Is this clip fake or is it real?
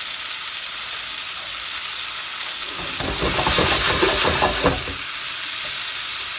real